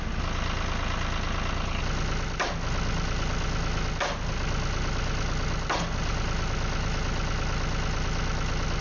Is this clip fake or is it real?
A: real